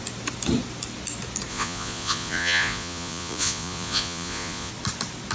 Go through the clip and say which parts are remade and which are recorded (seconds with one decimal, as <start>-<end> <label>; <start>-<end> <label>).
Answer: 0.0-1.5 recorded; 1.5-4.7 remade; 4.7-5.3 recorded